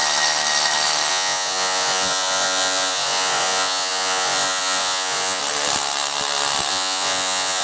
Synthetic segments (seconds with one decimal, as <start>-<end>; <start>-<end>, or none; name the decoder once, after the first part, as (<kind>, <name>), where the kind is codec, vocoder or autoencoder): 1.1-5.4 (vocoder, Vocos); 6.7-7.6